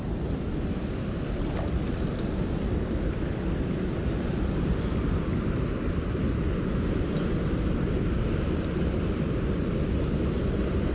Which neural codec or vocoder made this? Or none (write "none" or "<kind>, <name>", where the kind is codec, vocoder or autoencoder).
none